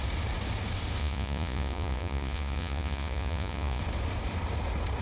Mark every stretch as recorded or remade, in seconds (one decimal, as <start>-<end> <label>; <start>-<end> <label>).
0.0-1.0 recorded; 1.0-3.8 remade; 3.8-5.0 recorded